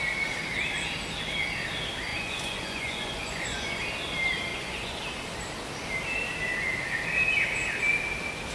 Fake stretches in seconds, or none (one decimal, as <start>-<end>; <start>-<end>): 2.1-3.8; 4.5-5.0